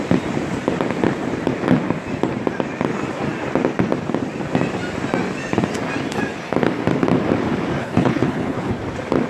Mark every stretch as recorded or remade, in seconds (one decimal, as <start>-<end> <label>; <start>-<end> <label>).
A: 0.0-7.8 recorded; 7.8-8.7 remade; 8.7-9.3 recorded